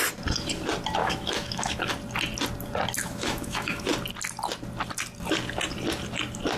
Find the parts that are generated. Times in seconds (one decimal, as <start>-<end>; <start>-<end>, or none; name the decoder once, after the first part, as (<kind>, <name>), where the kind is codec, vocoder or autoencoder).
1.0-1.9 (autoencoder, DAC-VAE); 3.0-3.9